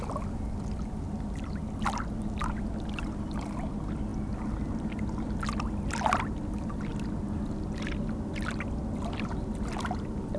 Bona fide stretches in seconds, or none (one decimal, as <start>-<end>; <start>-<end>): 0.0-10.4